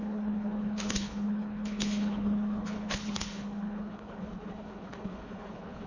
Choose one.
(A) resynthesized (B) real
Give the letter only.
A